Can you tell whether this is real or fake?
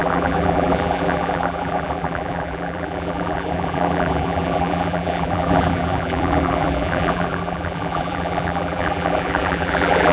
fake